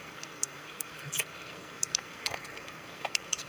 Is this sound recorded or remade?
remade